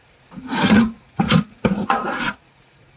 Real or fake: fake